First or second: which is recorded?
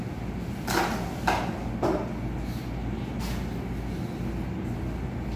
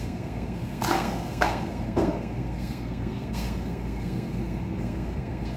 first